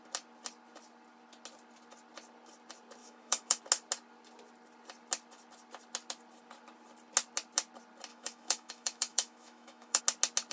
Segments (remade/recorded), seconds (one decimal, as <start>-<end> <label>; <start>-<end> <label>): 0.0-3.0 recorded; 3.0-3.6 remade; 3.6-8.1 recorded; 8.1-10.0 remade; 10.0-10.5 recorded